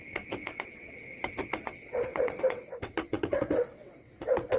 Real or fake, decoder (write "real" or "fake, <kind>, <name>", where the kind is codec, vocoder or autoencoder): fake, vocoder, WaveNeXt